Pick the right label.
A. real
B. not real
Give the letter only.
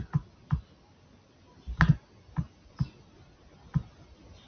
A